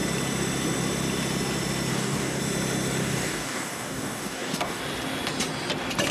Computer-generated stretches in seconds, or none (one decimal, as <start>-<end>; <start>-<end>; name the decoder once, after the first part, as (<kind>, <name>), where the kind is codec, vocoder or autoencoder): 1.9-2.4 (codec, DAC); 3.0-4.8